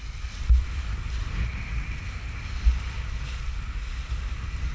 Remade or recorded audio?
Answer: recorded